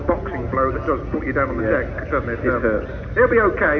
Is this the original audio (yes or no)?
yes